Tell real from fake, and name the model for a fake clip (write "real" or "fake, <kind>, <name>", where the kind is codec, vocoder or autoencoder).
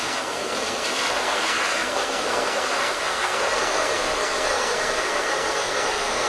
fake, codec, SNAC